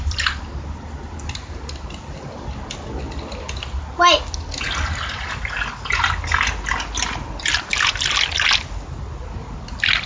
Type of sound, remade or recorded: recorded